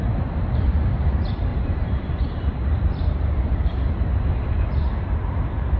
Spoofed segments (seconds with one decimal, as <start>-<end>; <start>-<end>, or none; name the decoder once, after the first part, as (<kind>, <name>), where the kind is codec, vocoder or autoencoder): 1.5-4.5 (vocoder, BigVGAN v2)